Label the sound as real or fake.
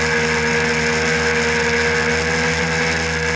real